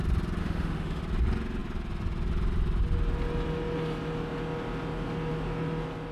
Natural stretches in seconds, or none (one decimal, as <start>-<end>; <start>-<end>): 0.0-0.4; 1.0-6.1